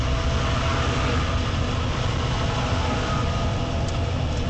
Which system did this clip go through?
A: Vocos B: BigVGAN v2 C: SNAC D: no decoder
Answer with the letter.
D